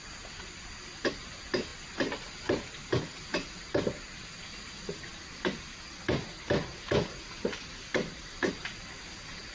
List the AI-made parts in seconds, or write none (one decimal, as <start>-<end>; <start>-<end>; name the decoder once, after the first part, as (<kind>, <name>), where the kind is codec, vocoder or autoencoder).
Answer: none